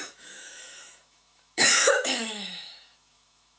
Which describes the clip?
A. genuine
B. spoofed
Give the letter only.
B